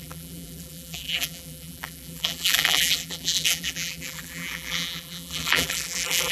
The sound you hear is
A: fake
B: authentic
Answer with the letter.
A